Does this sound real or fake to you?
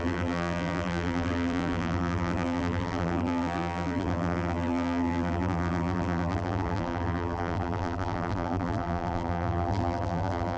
fake